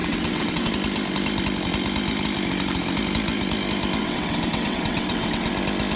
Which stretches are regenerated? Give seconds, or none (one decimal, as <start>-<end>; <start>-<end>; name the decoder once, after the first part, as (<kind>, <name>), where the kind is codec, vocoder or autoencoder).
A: 0.0-0.7 (vocoder, WaveNeXt); 4.0-5.5